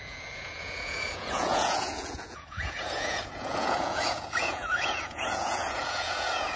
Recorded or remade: remade